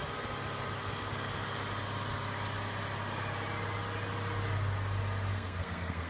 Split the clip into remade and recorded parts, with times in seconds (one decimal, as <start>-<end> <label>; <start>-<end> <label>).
0.0-5.3 recorded; 5.3-6.1 remade